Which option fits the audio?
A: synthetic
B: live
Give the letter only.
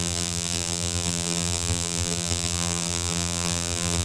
A